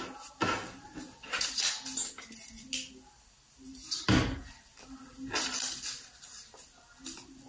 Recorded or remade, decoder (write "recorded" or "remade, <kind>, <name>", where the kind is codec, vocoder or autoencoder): recorded